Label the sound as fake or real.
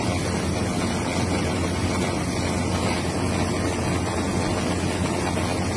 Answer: real